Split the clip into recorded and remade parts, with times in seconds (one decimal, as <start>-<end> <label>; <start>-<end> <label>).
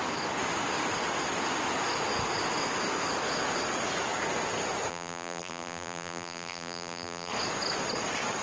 0.0-4.9 recorded; 4.9-7.3 remade; 7.3-8.4 recorded